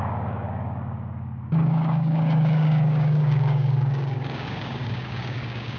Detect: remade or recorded remade